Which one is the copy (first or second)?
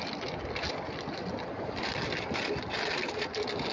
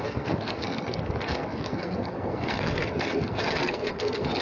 second